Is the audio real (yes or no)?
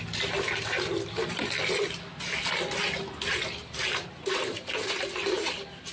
yes